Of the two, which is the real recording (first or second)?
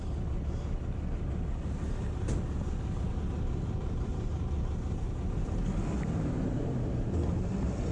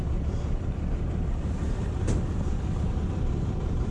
first